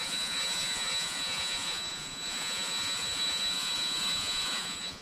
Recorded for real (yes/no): no